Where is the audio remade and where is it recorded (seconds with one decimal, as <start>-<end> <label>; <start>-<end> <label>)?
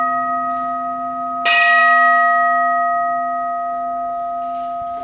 0.0-5.0 recorded